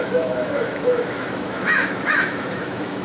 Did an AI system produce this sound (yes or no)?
yes